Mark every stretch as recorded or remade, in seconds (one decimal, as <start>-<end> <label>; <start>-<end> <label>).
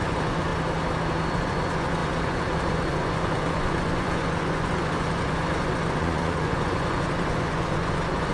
0.0-0.5 remade; 0.5-1.3 recorded; 1.3-8.3 remade